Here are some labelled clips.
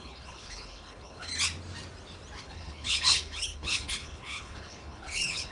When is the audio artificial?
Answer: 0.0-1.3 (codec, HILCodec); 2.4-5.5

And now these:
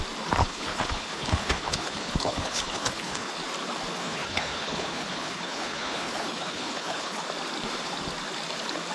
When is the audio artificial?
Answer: 0.4-3.3 (codec, HILCodec); 4.0-7.2